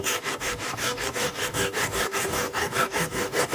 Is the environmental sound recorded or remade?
remade